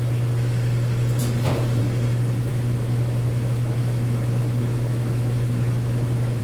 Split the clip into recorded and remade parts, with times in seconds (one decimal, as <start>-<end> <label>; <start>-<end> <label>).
0.0-2.5 recorded; 2.5-6.4 remade